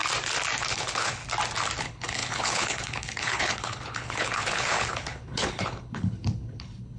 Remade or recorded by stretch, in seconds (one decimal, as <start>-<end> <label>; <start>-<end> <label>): 0.0-0.7 recorded; 0.7-1.2 remade; 1.2-1.8 recorded; 1.8-7.0 remade